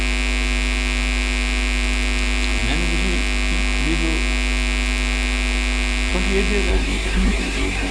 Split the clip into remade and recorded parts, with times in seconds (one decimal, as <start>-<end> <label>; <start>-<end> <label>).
0.0-6.7 recorded; 6.7-7.9 remade